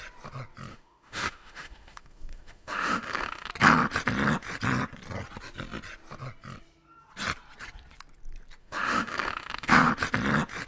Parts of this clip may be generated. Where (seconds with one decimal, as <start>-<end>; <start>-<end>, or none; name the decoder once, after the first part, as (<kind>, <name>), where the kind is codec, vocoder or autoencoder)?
0.7-3.5 (autoencoder, DAC-VAE); 8.6-9.9